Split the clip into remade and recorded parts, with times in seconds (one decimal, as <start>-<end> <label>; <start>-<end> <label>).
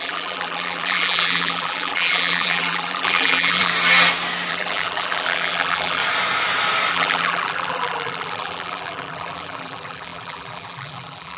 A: 0.0-3.7 remade; 3.7-4.5 recorded; 4.5-6.0 remade; 6.0-6.9 recorded; 6.9-11.4 remade